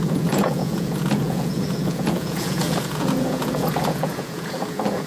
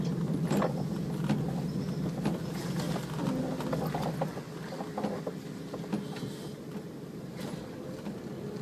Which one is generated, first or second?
first